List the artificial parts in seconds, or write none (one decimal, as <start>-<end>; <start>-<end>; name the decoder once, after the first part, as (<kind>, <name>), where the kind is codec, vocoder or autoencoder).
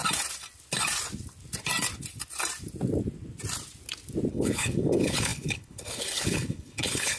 4.3-7.2 (codec, HILCodec)